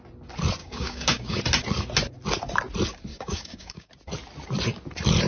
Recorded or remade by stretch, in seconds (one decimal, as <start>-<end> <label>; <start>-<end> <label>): 0.0-0.6 recorded; 0.6-1.4 remade; 1.4-3.1 recorded; 3.1-3.9 remade; 3.9-5.3 recorded